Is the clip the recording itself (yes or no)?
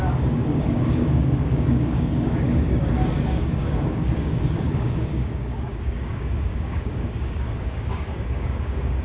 no